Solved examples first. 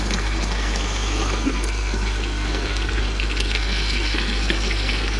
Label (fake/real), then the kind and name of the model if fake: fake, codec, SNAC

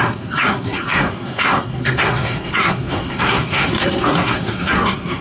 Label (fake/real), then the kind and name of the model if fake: fake, codec, SNAC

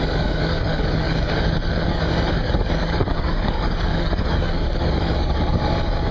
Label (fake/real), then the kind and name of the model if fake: fake, codec, DAC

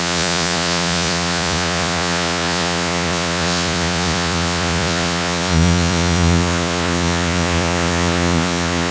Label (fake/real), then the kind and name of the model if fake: fake, vocoder, Vocos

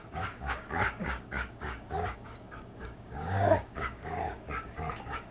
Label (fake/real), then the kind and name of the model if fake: fake, codec, DAC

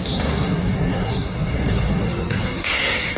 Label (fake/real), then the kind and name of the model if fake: fake, codec, SNAC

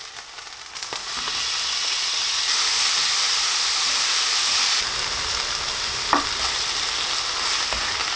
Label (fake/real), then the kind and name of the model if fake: real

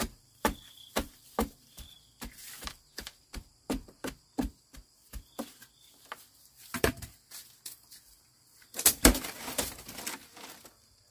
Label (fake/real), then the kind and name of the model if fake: fake, vocoder, BigVGAN v2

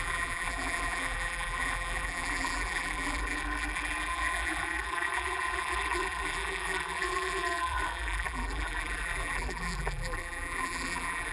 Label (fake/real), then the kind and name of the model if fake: fake, vocoder, BigVGAN v2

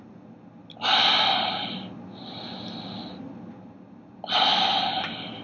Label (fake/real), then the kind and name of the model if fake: real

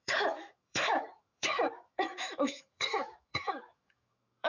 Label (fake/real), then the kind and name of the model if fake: fake, autoencoder, DAC-VAE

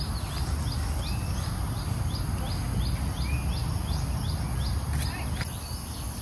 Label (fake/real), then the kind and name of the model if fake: real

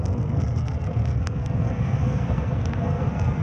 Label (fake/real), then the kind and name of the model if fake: fake, codec, SNAC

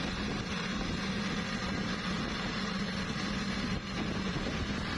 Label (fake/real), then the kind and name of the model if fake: real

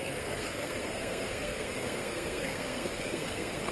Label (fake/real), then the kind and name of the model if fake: fake, codec, SNAC